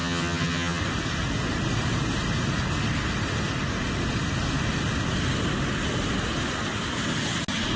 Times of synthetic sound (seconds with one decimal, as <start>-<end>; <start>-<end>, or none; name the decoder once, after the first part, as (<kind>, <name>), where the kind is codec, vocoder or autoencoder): 0.0-0.8 (vocoder, HiFi-GAN)